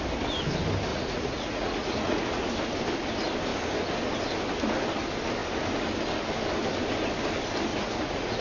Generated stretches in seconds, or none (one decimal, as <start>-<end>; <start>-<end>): 0.9-2.5; 7.7-8.4